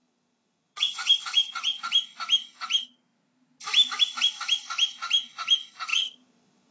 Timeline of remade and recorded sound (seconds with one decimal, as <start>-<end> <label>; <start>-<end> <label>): 0.0-1.8 remade; 1.8-5.9 recorded; 5.9-6.7 remade